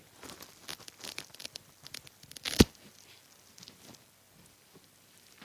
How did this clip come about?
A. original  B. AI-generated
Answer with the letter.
B